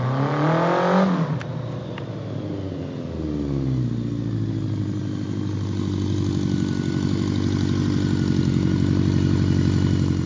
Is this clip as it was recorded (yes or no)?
yes